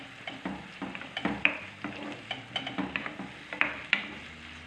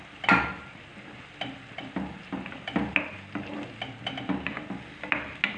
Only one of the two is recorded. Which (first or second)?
second